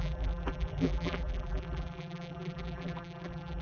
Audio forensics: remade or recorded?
remade